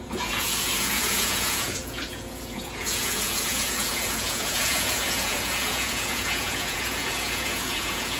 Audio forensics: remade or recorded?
remade